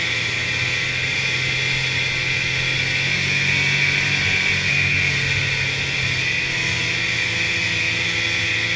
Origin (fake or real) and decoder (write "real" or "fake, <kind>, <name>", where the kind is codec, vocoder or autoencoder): real